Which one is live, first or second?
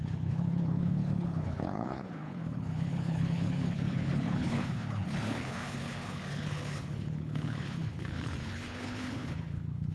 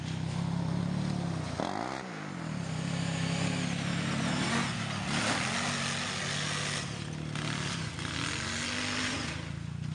second